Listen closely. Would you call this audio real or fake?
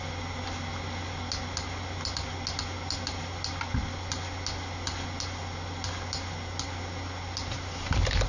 real